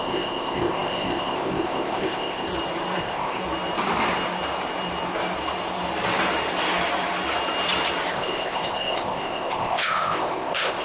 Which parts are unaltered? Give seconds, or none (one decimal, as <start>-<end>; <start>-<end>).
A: 2.5-3.0; 3.4-8.1